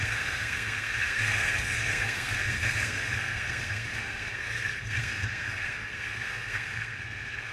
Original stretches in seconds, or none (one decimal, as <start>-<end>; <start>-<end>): none